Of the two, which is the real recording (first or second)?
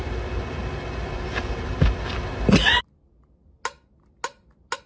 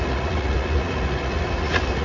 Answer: first